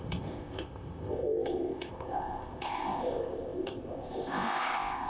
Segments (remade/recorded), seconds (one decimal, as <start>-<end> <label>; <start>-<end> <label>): 0.0-5.1 remade